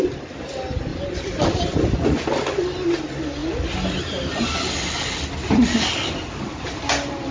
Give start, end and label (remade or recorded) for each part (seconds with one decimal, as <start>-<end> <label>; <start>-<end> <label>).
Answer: 0.0-7.3 recorded